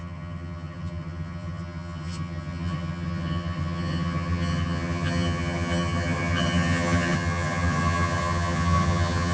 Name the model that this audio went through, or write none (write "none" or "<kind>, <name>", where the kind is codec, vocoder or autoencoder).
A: vocoder, HiFi-GAN